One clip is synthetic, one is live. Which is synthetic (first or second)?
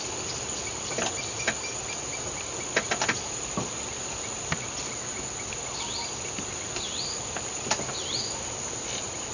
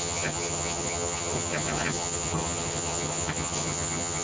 second